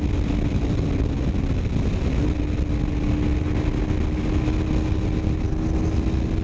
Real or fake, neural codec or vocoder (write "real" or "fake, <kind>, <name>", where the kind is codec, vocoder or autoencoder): real